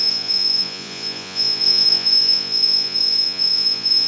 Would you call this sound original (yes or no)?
no